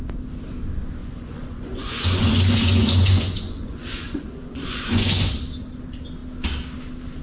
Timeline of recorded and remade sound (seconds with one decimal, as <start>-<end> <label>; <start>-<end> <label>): 0.0-1.0 recorded; 1.0-5.3 remade; 5.3-7.2 recorded